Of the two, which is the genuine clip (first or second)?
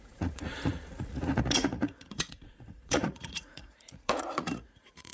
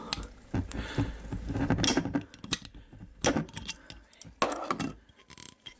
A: second